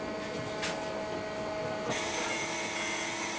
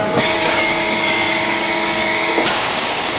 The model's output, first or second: second